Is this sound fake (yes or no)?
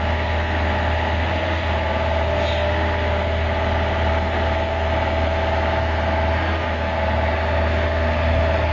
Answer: no